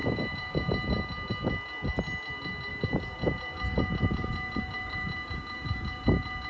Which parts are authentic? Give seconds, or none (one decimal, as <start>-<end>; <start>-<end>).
0.7-2.7